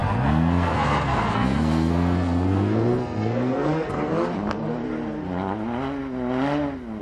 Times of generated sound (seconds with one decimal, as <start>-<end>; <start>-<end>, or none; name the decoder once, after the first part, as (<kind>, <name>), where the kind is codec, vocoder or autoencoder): 0.0-4.1 (codec, SNAC)